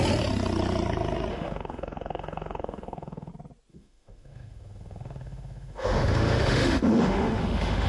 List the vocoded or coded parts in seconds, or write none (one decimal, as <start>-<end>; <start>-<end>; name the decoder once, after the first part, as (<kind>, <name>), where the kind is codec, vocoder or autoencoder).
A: 1.3-3.3 (autoencoder, DAC-VAE); 3.7-7.9